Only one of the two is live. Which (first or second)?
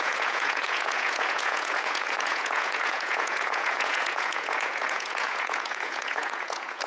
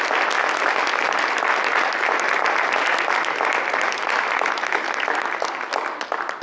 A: second